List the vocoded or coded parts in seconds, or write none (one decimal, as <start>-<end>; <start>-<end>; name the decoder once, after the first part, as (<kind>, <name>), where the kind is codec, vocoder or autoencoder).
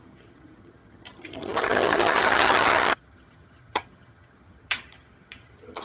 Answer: 0.0-5.8 (vocoder, HiFi-GAN)